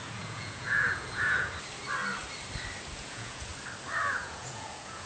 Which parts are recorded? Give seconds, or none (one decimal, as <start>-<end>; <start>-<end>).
1.5-2.9; 3.5-4.2